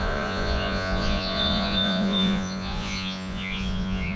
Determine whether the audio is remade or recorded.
remade